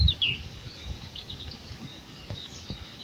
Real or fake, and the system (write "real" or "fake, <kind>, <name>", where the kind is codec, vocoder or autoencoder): fake, codec, DAC